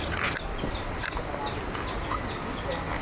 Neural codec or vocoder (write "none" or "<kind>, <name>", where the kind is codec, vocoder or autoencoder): none